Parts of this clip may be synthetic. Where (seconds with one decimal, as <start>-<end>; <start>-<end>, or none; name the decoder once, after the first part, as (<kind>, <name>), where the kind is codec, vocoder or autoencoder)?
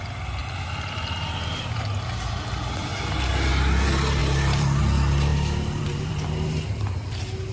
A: 0.4-1.6 (vocoder, BigVGAN v2); 4.2-4.8; 5.3-6.3